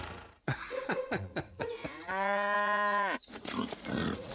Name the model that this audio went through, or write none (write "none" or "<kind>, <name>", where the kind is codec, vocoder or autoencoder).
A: vocoder, Vocos